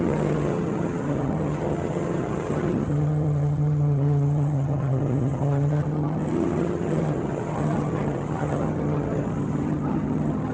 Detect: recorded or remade remade